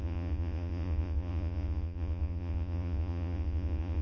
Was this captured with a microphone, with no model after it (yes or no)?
no